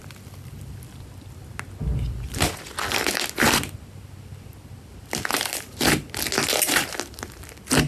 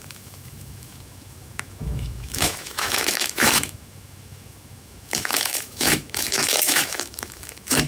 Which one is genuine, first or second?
first